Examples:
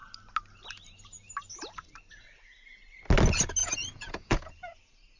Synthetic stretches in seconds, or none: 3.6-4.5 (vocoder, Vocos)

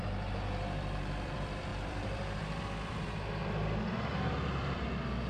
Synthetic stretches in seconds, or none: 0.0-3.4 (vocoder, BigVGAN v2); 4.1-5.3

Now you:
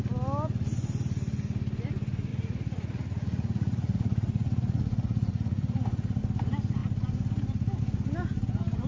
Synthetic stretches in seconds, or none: 2.3-6.2 (vocoder, Vocos)